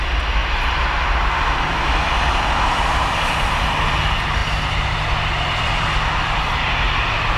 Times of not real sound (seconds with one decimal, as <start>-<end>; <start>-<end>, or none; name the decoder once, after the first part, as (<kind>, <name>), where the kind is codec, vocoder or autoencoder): 0.4-1.0 (vocoder, BigVGAN v2)